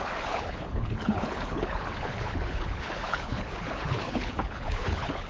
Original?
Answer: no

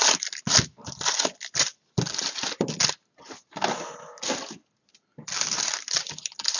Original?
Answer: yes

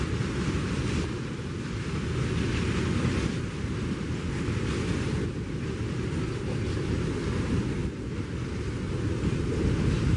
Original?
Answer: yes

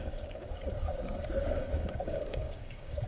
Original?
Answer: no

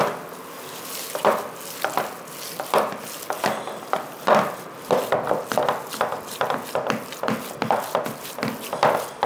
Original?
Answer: yes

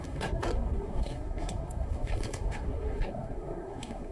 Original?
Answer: no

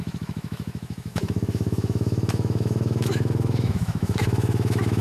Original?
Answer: no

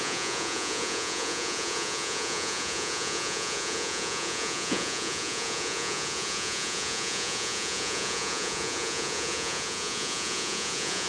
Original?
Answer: no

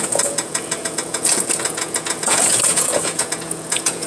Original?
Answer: no